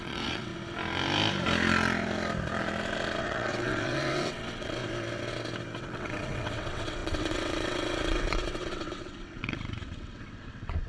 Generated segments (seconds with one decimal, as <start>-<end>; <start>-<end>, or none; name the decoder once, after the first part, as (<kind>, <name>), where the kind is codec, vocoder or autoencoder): 0.0-0.5 (vocoder, WaveNeXt); 3.2-4.8; 5.8-10.9